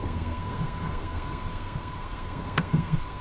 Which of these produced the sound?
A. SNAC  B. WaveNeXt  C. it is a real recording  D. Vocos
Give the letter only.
A